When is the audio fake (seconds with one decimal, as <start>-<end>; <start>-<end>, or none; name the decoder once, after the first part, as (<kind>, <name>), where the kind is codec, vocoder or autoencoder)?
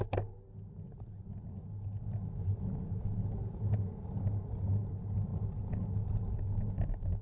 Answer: none